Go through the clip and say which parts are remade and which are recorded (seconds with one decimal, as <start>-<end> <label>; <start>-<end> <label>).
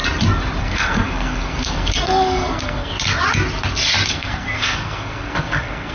0.0-0.6 recorded; 0.6-2.9 remade; 2.9-4.1 recorded; 4.1-5.9 remade